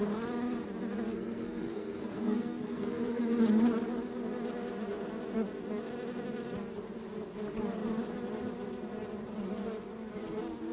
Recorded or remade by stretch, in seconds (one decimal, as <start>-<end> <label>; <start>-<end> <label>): 0.0-1.1 recorded; 1.1-3.2 remade; 3.2-10.7 recorded